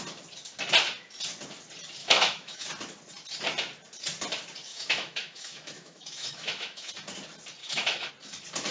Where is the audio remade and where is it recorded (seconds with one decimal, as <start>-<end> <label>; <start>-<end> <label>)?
0.0-2.0 recorded; 2.0-2.7 remade; 2.7-4.7 recorded; 4.7-6.9 remade; 6.9-7.6 recorded; 7.6-8.1 remade; 8.1-8.7 recorded